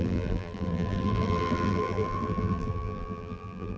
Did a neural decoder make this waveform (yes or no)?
yes